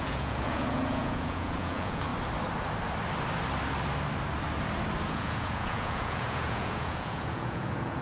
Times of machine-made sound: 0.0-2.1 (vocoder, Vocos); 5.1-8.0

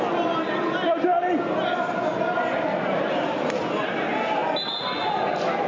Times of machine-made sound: none

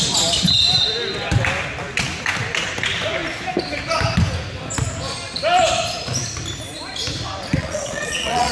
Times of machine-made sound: 7.6-8.5 (vocoder, Vocos)

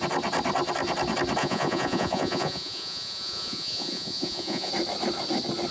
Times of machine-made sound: 1.4-4.7 (vocoder, Vocos)

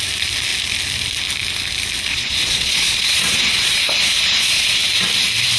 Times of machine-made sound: 2.1-4.8 (vocoder, Vocos)

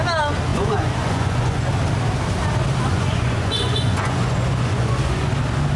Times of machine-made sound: 0.5-1.7 (vocoder, Vocos); 2.9-5.3

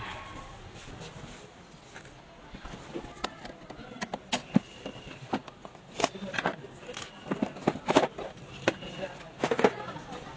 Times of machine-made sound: none